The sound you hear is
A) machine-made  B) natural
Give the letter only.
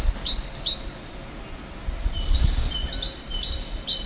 B